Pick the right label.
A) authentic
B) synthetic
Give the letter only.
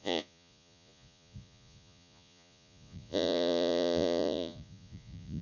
B